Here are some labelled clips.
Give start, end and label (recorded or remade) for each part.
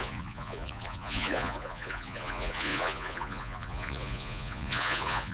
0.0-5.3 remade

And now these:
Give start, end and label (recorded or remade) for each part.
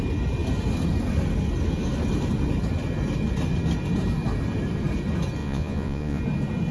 0.0-5.4 recorded; 5.4-6.2 remade; 6.2-6.7 recorded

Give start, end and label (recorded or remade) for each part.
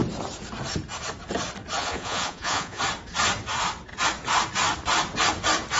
0.0-1.8 recorded; 1.8-2.8 remade; 2.8-5.8 recorded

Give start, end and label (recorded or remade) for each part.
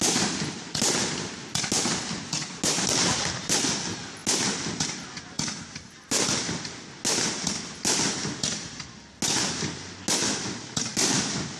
0.0-11.6 recorded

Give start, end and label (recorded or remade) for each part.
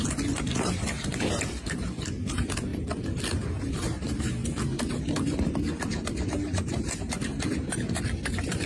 0.0-2.7 remade; 2.7-3.2 recorded; 3.2-8.7 remade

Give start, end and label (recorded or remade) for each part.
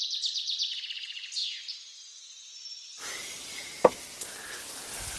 0.0-5.2 recorded